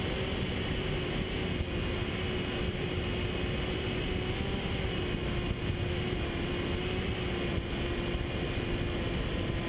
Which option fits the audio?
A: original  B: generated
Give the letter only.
A